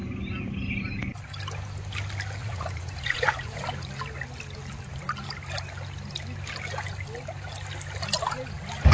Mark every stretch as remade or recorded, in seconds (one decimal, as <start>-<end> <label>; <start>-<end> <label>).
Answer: 0.0-2.4 recorded; 2.4-3.6 remade; 3.6-8.9 recorded